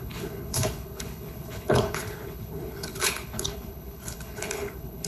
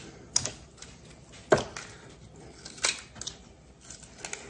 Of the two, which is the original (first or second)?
second